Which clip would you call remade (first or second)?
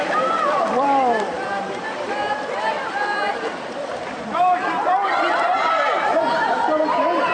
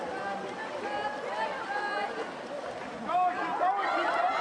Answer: first